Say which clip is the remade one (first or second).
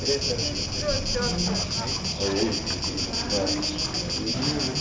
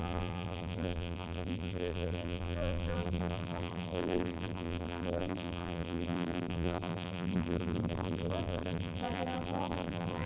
second